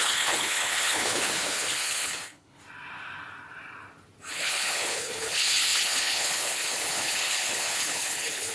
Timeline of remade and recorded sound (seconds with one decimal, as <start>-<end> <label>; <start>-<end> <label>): 0.0-2.6 remade; 2.6-4.3 recorded; 4.3-8.5 remade